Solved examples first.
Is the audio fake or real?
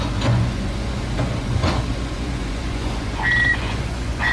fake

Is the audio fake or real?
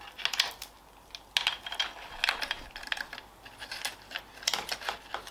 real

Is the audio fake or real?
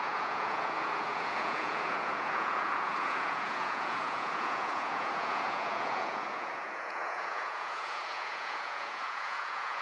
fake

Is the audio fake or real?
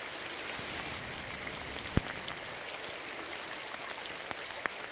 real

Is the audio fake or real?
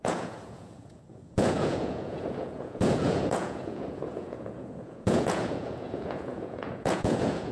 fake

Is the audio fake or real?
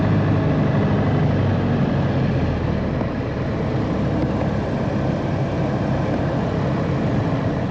real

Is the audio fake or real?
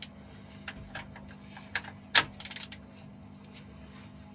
real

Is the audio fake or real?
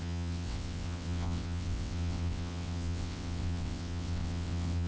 fake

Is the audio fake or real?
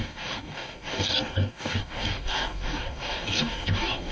fake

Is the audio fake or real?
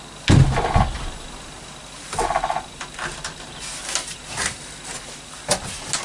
real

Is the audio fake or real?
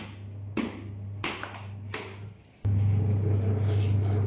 real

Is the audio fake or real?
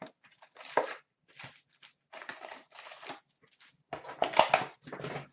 real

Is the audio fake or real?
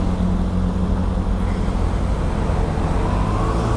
real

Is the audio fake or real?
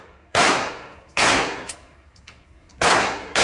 fake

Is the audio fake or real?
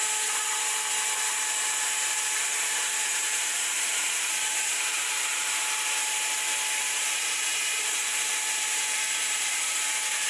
fake